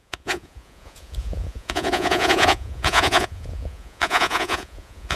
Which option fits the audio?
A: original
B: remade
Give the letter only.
B